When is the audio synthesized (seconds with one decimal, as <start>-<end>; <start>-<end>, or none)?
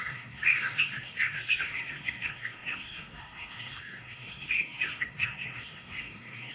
0.0-6.5